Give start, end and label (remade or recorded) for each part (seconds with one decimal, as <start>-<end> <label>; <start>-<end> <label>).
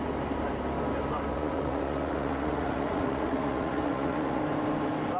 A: 0.0-1.3 recorded; 1.3-4.4 remade; 4.4-5.2 recorded